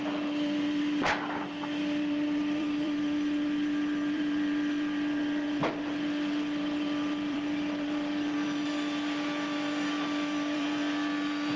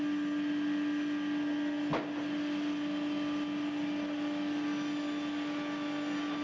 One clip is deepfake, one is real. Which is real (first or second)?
second